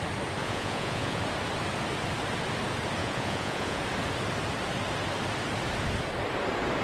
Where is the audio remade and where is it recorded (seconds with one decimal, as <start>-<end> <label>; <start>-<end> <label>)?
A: 0.0-0.4 recorded; 0.4-1.2 remade; 1.2-3.0 recorded; 3.0-3.8 remade; 3.8-6.8 recorded